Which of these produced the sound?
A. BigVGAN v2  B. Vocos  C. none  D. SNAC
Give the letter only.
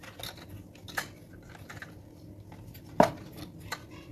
C